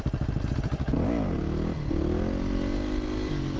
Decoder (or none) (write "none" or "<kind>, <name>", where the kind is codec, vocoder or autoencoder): none